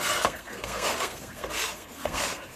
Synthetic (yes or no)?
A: yes